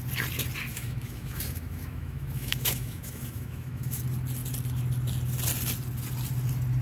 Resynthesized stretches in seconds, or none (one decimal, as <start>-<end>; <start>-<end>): 0.7-4.0